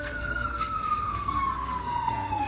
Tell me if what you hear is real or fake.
fake